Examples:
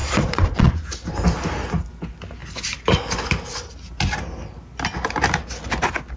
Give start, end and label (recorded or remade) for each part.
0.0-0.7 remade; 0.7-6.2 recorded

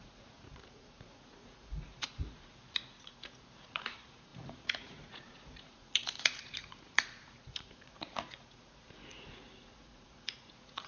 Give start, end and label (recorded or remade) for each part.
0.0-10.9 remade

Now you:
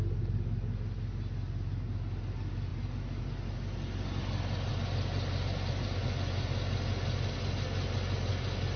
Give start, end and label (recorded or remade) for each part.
0.0-8.8 recorded

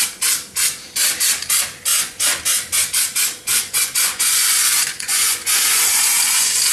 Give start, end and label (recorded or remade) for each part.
0.0-1.9 recorded; 1.9-2.4 remade; 2.4-3.5 recorded; 3.5-6.7 remade

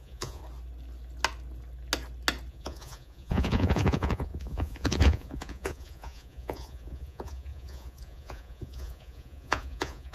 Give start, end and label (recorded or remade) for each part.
0.0-0.4 remade; 0.4-2.5 recorded; 2.5-10.1 remade

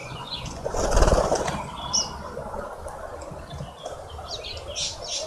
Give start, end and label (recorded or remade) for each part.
0.0-0.8 remade; 0.8-5.3 recorded